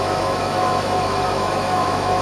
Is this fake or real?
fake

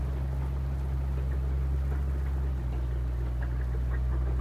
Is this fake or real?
real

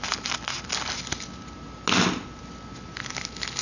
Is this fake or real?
real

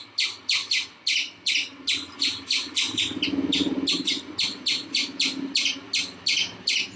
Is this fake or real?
real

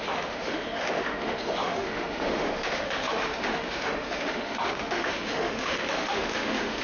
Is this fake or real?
fake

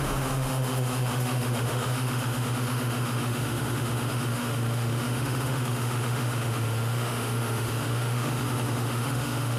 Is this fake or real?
fake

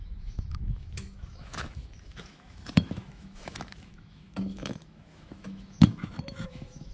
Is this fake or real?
fake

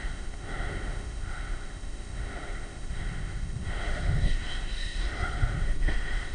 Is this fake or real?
fake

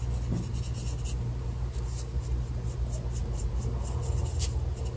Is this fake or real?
real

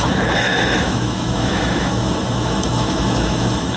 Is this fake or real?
fake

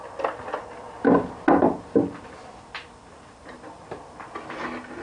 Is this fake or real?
real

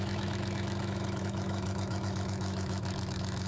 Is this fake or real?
fake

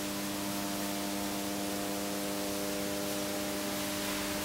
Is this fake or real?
real